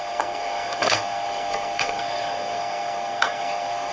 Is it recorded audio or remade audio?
remade